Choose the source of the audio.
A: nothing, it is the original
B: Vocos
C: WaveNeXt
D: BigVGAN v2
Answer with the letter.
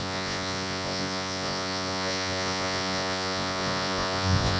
B